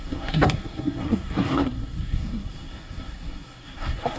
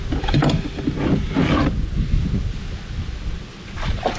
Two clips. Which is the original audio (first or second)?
second